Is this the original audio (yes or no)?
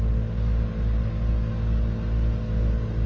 yes